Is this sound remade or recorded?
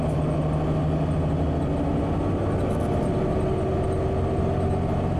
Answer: recorded